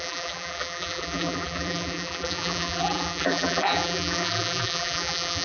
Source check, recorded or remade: remade